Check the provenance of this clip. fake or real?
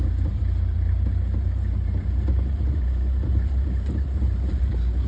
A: fake